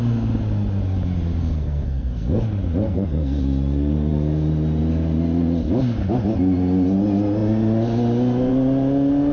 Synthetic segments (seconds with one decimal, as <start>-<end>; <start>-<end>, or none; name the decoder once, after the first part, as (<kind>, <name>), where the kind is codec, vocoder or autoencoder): 1.4-2.4 (codec, SNAC); 2.8-3.4